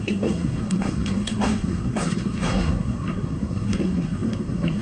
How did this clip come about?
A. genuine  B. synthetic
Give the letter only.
B